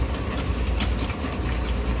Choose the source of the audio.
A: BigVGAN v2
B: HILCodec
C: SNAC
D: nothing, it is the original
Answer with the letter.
D